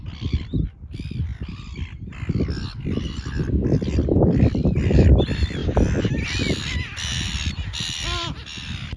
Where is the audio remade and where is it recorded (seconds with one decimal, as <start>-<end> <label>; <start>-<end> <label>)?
0.0-9.0 remade